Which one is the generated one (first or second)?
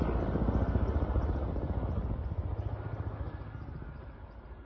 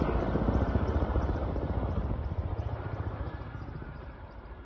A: second